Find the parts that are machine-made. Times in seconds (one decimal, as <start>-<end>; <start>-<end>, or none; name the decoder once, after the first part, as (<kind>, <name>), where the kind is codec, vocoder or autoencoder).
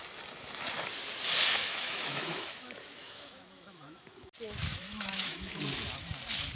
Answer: 1.5-4.3 (autoencoder, DAC-VAE); 4.7-5.6